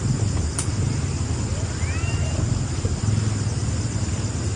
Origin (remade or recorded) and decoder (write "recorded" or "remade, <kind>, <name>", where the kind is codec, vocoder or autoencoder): recorded